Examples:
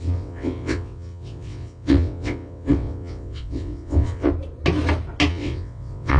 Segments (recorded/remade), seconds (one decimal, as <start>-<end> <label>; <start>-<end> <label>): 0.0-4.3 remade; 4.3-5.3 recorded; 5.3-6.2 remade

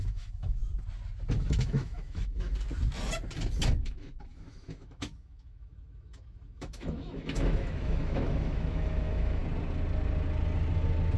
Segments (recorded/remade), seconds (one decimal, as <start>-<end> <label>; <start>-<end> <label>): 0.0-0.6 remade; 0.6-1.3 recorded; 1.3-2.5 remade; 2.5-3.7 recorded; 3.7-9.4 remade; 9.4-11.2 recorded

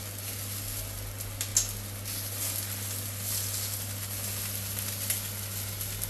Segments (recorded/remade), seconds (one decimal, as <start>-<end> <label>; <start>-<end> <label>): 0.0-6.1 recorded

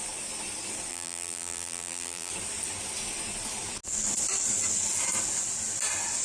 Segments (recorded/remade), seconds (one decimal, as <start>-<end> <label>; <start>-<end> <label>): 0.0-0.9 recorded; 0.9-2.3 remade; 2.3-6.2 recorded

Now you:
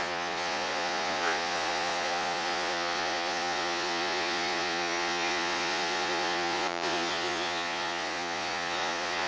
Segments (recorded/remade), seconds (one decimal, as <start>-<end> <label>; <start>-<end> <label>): 0.0-9.3 remade